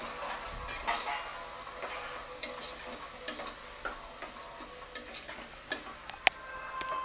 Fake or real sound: real